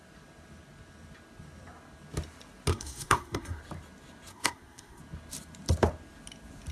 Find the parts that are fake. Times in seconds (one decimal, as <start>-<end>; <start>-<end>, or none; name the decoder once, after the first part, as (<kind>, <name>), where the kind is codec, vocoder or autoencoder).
2.7-3.6 (codec, SNAC); 4.3-5.0